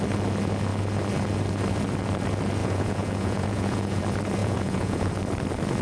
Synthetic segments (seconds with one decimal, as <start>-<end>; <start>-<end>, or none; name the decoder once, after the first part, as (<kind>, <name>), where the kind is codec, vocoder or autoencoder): 2.6-4.0 (vocoder, Vocos); 4.4-5.1